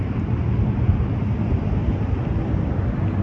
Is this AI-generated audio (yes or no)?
no